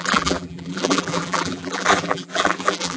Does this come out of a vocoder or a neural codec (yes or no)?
yes